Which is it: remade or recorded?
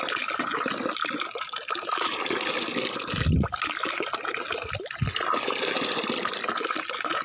recorded